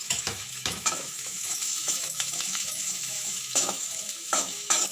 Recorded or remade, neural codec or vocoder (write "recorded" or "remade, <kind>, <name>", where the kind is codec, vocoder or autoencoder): remade, autoencoder, DAC-VAE